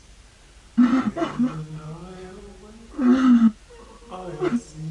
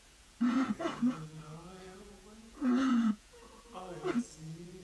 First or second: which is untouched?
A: first